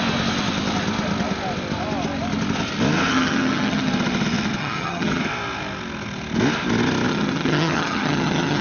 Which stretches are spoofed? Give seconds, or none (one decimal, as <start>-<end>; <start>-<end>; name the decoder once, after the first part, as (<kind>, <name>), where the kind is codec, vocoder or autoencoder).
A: 3.1-3.9 (vocoder, HiFi-GAN); 4.6-5.2; 7.1-8.6